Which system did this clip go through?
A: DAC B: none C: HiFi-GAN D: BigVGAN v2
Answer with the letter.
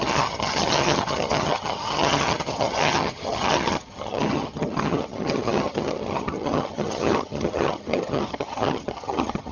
C